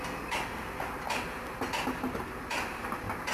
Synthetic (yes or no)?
no